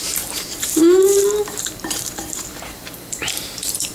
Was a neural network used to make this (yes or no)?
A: yes